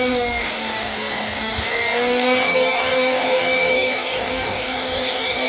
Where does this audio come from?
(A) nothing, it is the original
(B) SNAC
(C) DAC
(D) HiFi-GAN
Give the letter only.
C